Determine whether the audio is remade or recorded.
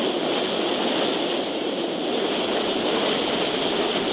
recorded